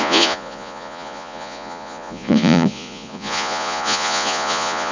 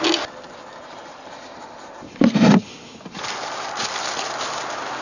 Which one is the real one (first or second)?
second